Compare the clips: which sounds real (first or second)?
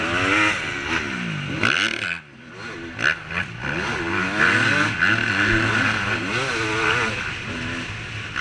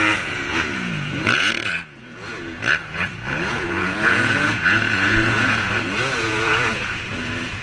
first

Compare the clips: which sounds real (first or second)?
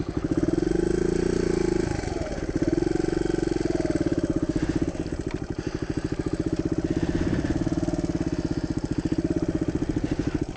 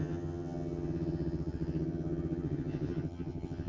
first